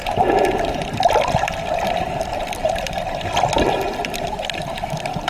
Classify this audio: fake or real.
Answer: real